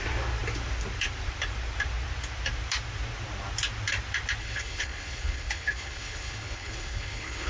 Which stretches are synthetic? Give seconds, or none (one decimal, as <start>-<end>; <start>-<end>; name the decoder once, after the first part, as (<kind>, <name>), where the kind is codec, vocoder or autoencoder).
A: 4.4-7.5 (codec, HILCodec)